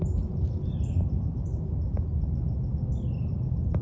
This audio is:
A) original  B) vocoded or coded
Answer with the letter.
A